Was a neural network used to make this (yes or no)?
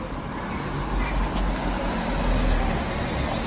no